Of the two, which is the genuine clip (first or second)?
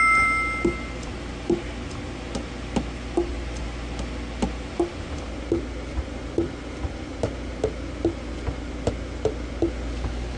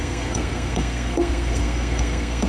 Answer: first